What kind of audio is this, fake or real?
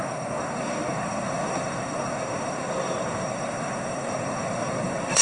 fake